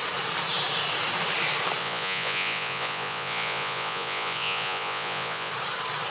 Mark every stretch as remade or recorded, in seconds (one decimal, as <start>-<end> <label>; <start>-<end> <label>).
0.0-1.8 recorded; 1.8-5.5 remade; 5.5-6.1 recorded